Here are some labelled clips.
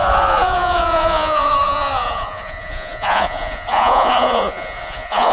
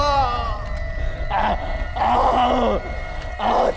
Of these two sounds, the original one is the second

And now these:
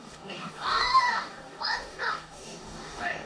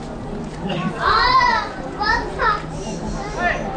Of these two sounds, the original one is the second